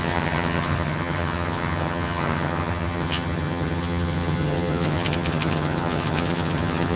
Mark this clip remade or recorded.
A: remade